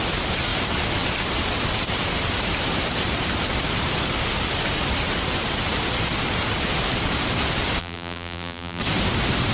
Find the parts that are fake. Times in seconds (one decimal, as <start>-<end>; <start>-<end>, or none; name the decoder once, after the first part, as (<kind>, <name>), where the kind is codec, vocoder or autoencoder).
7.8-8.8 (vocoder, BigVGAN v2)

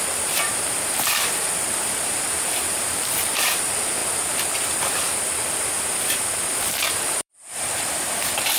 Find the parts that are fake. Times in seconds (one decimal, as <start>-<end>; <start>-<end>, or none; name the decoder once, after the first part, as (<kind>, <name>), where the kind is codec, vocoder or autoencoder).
0.0-4.0 (vocoder, BigVGAN v2); 6.9-8.6

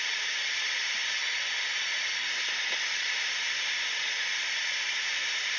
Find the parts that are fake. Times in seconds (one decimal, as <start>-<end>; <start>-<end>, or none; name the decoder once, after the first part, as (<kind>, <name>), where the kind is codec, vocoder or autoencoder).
0.0-1.2 (vocoder, BigVGAN v2); 4.6-5.6

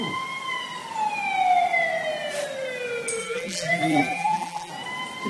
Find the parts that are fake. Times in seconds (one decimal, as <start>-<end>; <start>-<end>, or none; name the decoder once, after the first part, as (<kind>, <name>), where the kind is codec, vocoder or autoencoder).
3.2-4.7 (vocoder, BigVGAN v2)